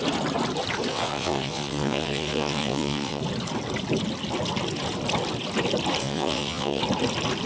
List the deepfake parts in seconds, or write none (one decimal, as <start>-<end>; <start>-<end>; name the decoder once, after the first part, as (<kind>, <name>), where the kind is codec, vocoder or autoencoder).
0.9-3.2 (vocoder, WaveNeXt); 6.0-6.8